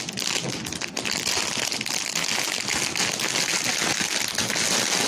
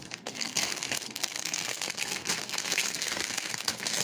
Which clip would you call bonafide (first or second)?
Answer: first